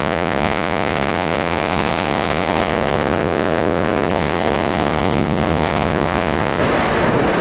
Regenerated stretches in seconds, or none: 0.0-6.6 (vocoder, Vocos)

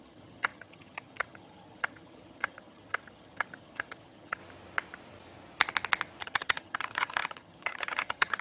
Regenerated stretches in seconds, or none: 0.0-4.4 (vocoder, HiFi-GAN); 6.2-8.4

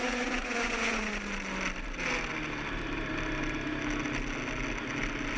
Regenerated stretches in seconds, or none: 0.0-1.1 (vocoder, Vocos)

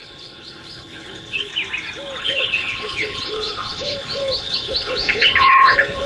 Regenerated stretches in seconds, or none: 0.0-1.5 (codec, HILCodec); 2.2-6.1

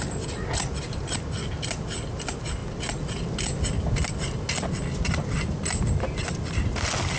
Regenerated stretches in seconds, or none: none